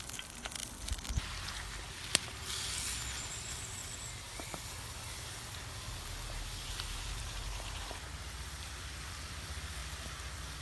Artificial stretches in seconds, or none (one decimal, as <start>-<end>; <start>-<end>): 0.0-0.6; 1.5-3.8; 6.3-9.8